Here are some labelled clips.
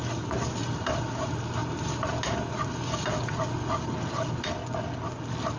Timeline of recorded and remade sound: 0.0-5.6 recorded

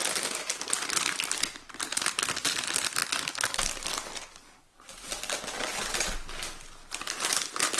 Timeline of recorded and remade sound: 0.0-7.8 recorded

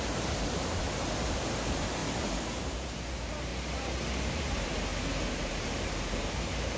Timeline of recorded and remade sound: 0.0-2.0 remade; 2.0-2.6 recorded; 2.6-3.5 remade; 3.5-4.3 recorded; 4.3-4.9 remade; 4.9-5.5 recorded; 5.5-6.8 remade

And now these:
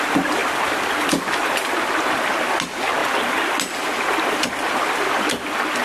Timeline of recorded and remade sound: 0.0-5.8 recorded